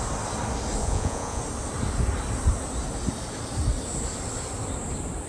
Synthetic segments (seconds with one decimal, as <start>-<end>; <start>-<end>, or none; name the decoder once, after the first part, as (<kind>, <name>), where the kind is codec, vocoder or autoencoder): 0.8-1.4 (vocoder, Vocos)